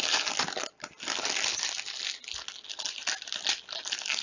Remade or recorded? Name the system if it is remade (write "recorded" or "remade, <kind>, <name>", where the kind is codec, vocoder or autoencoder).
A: recorded